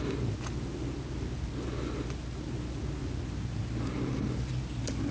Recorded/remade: recorded